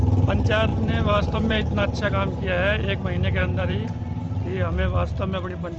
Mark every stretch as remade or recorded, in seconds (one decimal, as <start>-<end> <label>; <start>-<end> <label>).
0.0-0.7 recorded; 0.7-2.1 remade; 2.1-3.4 recorded; 3.4-4.2 remade; 4.2-5.8 recorded